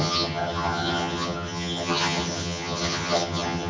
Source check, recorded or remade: remade